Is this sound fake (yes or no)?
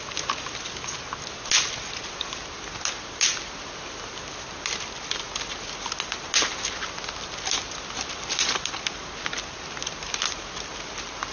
no